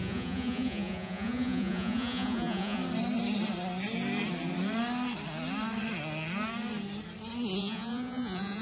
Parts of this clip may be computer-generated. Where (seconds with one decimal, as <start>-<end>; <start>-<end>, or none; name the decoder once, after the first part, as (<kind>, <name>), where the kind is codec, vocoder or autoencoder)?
0.0-2.8 (vocoder, Vocos); 7.6-8.6